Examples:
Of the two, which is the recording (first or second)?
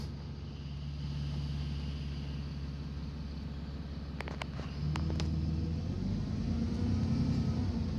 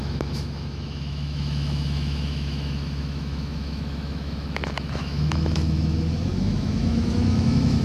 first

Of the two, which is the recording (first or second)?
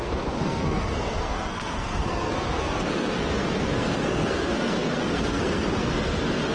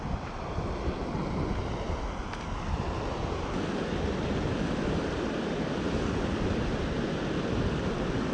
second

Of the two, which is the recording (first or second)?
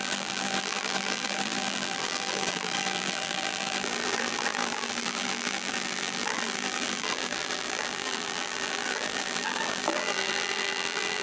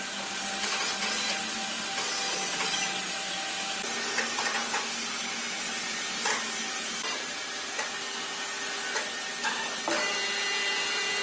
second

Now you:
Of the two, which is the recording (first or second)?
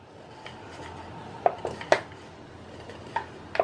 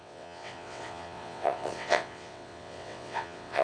first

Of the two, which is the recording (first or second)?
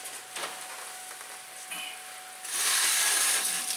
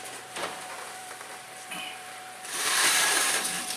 first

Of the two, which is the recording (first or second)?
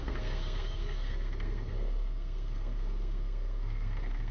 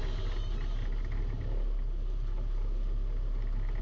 second